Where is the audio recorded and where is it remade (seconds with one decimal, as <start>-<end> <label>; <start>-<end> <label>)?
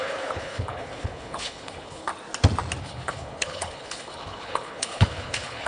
0.0-2.1 remade; 2.1-2.8 recorded; 2.8-5.7 remade